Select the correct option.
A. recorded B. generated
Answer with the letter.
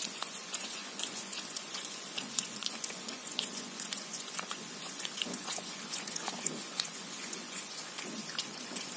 B